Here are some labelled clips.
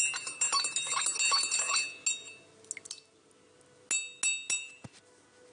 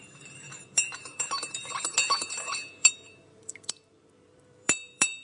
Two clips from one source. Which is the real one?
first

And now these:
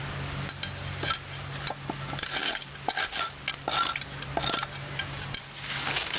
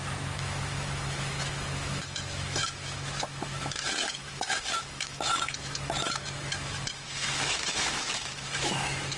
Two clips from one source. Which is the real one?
first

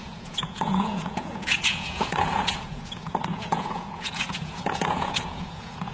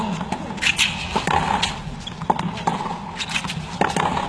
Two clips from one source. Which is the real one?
second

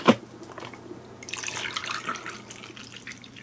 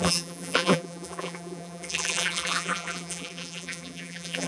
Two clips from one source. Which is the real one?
first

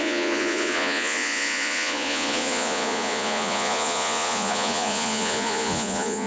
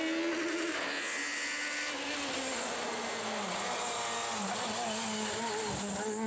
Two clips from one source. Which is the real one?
second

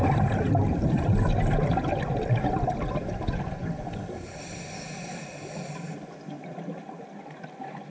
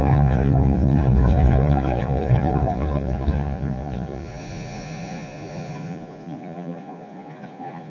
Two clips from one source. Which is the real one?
first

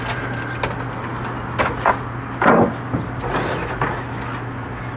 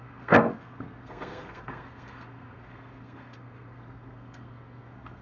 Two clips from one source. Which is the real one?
first